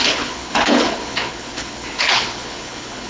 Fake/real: fake